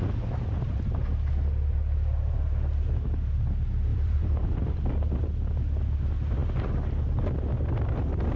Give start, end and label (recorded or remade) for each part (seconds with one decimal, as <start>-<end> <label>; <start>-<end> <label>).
0.0-3.9 recorded; 3.9-4.9 remade; 4.9-8.4 recorded

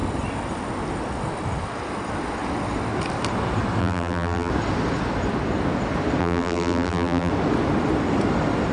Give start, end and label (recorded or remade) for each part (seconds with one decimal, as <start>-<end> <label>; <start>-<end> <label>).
0.0-3.8 recorded; 3.8-4.5 remade; 4.5-6.2 recorded; 6.2-7.3 remade; 7.3-8.7 recorded

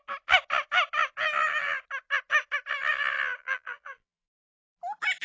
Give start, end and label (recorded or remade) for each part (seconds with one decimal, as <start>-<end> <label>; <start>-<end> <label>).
0.0-3.4 recorded; 3.4-4.8 remade; 4.8-5.2 recorded

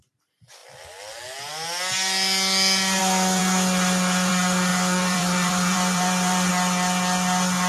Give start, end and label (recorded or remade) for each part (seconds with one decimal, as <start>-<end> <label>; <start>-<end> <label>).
0.0-4.7 recorded; 4.7-6.5 remade; 6.5-7.7 recorded

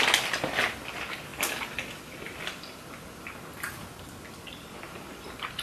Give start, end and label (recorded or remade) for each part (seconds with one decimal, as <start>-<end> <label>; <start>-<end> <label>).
0.0-5.6 recorded

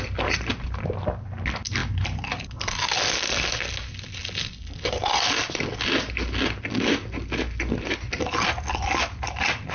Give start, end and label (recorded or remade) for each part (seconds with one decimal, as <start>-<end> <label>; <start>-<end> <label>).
0.0-1.8 recorded; 1.8-3.3 remade; 3.3-4.2 recorded; 4.2-4.8 remade; 4.8-9.7 recorded